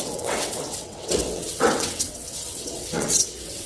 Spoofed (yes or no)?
yes